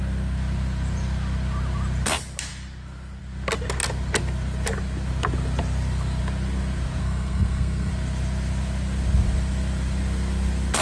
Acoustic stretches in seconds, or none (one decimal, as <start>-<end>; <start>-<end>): 0.0-7.0; 7.9-10.8